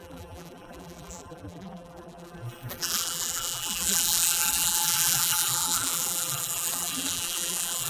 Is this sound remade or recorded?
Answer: remade